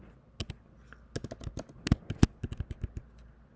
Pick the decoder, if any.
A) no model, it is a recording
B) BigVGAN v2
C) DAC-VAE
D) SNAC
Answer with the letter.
A